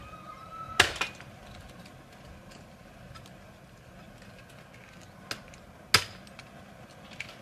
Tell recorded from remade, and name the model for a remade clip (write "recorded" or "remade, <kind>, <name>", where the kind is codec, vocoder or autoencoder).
recorded